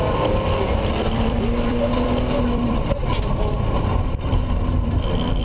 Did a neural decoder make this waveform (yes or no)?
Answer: yes